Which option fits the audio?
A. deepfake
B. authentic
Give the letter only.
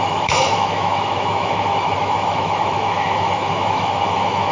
A